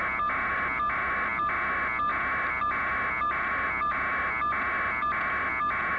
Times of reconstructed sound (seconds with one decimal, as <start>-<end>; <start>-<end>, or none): none